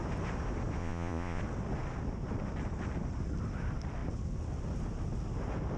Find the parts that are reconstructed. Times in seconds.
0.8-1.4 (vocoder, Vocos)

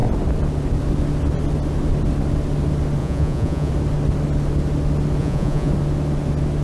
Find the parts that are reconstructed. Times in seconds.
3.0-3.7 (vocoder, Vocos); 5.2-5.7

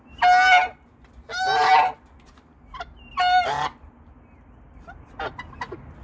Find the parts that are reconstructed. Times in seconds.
none